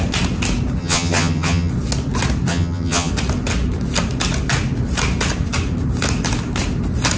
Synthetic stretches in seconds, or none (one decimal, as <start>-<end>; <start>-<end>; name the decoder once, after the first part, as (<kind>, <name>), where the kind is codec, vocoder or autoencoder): 0.8-1.7 (vocoder, HiFi-GAN); 2.5-3.1